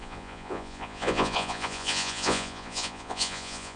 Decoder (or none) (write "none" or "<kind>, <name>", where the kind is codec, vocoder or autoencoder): vocoder, Vocos